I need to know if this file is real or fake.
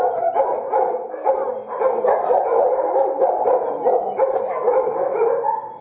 real